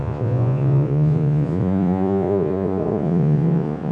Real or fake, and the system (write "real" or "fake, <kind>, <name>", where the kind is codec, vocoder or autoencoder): fake, vocoder, Vocos